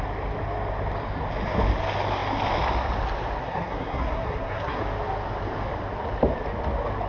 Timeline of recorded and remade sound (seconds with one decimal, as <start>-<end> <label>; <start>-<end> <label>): 0.0-3.4 recorded; 3.4-4.8 remade; 4.8-7.1 recorded